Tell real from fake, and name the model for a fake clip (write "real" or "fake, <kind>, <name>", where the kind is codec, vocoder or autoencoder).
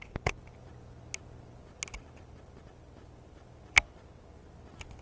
real